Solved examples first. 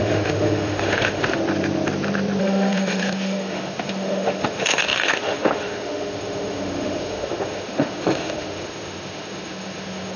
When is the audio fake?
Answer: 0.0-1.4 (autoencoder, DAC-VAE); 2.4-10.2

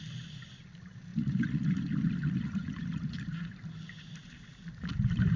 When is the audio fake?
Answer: 1.1-1.8 (vocoder, Vocos); 2.2-3.5